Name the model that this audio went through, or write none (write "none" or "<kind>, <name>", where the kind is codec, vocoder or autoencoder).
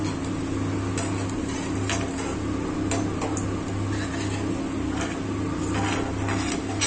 none